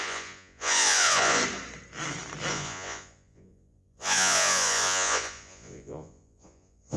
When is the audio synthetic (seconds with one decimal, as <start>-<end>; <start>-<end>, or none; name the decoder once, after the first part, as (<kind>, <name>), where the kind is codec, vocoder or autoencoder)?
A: 0.0-1.4 (vocoder, Vocos); 2.5-7.0